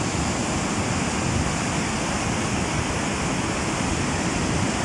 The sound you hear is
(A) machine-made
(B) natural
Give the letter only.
B